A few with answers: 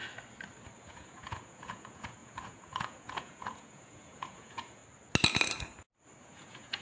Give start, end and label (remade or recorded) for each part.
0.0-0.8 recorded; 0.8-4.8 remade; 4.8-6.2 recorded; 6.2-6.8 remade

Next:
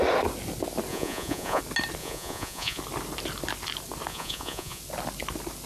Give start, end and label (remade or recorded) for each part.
0.0-0.9 recorded; 0.9-1.6 remade; 1.6-2.0 recorded; 2.0-2.8 remade; 2.8-4.1 recorded; 4.1-4.8 remade; 4.8-5.7 recorded

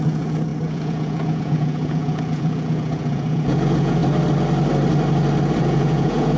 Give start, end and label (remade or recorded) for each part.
0.0-4.0 remade; 4.0-5.6 recorded; 5.6-6.4 remade

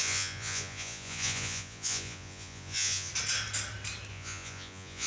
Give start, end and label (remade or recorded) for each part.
0.0-3.1 remade; 3.1-4.1 recorded; 4.1-5.1 remade

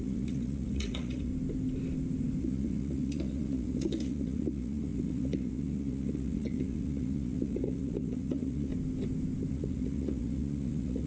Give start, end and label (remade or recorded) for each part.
0.0-1.3 remade; 1.3-2.4 recorded; 2.4-8.7 remade; 8.7-9.5 recorded; 9.5-11.1 remade

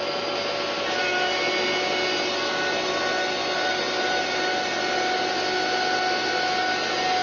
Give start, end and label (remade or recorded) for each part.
0.0-7.2 recorded

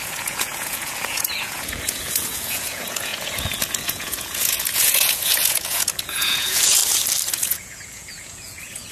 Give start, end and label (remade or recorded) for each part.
0.0-6.8 remade; 6.8-7.3 recorded; 7.3-8.9 remade

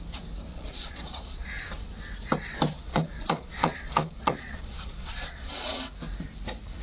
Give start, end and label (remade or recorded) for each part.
0.0-0.5 recorded; 0.5-1.5 remade; 1.5-2.7 recorded; 2.7-5.8 remade; 5.8-6.8 recorded